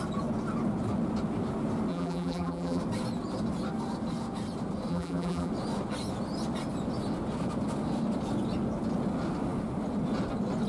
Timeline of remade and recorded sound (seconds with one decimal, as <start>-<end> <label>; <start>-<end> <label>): 0.0-1.9 recorded; 1.9-2.8 remade; 2.8-4.9 recorded; 4.9-5.5 remade; 5.5-10.7 recorded